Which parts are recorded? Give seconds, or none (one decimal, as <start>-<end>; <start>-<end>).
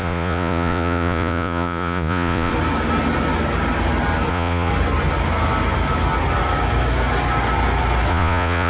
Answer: 2.5-4.3; 4.7-8.1